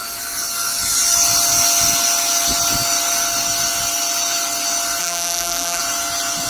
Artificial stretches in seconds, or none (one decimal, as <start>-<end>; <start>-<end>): 5.0-5.8